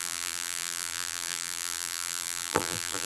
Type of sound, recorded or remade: remade